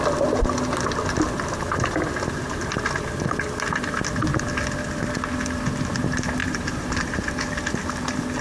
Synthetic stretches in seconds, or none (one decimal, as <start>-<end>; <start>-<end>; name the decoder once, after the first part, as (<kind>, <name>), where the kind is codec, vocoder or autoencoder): 6.4-7.1 (vocoder, BigVGAN v2)